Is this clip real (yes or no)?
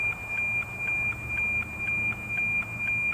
yes